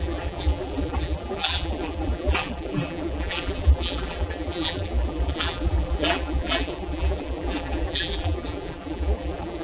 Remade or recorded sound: remade